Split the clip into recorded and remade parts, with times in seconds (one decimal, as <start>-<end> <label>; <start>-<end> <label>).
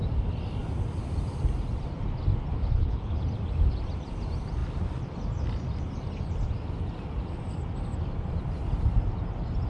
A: 0.0-2.5 recorded; 2.5-3.2 remade; 3.2-9.7 recorded